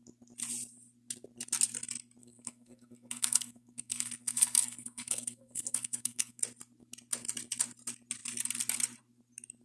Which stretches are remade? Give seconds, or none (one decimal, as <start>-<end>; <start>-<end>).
2.2-6.4